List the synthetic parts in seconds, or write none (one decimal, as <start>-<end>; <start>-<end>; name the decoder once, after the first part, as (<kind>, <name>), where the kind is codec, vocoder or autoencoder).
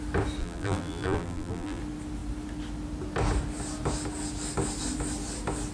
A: 0.4-1.8 (vocoder, BigVGAN v2)